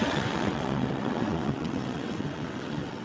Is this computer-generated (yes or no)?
yes